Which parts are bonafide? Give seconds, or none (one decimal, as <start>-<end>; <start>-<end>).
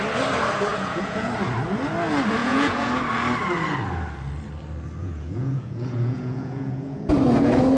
0.0-0.7; 1.3-2.4; 2.9-5.0; 7.1-7.8